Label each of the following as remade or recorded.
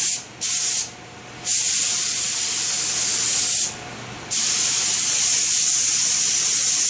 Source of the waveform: recorded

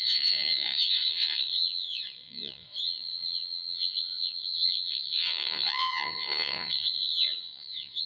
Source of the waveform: remade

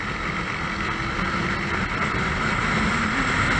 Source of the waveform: recorded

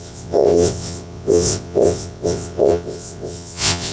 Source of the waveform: remade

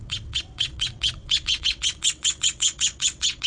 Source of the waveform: remade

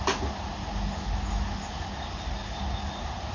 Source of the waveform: recorded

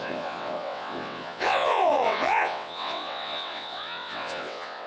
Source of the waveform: remade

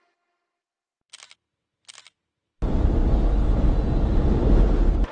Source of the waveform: recorded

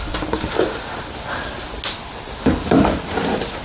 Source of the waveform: recorded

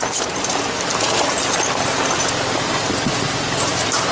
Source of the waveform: recorded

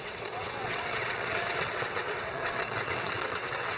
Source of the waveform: remade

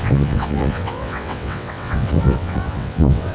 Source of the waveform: remade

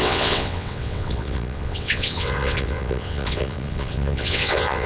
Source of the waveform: remade